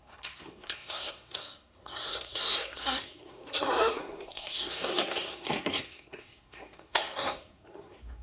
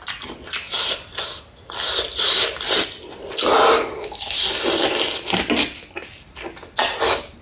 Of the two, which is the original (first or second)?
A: second